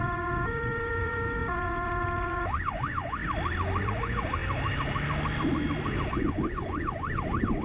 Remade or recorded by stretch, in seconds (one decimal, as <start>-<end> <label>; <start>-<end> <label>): 0.0-3.2 remade; 3.2-3.8 recorded; 3.8-4.4 remade; 4.4-6.1 recorded; 6.1-7.6 remade